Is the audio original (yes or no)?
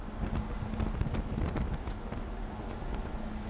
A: yes